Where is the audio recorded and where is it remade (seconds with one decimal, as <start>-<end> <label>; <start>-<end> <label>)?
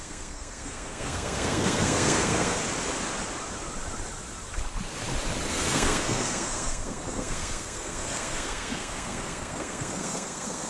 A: 0.0-2.6 remade; 2.6-5.5 recorded; 5.5-10.7 remade